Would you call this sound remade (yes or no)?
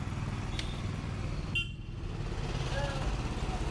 no